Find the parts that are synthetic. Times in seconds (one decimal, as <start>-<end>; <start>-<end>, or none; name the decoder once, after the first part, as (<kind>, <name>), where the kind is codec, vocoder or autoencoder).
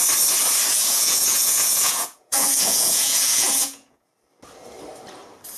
0.7-4.1 (vocoder, Vocos)